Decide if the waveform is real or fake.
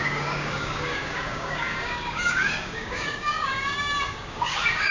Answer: fake